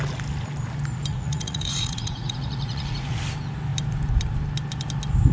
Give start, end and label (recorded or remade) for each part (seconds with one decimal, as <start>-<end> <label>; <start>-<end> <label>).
0.0-1.1 recorded; 1.1-3.2 remade; 3.2-5.3 recorded